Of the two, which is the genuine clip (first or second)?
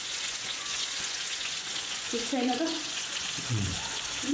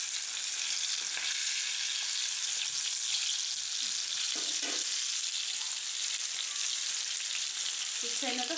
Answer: second